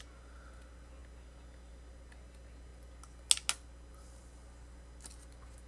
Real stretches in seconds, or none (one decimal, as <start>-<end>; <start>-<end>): 0.0-5.7